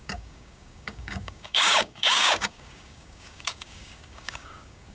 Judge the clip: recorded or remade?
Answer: remade